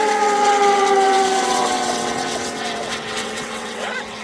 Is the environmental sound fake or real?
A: fake